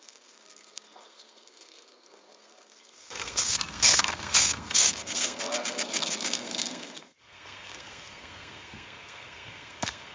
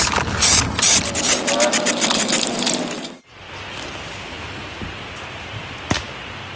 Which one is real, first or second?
second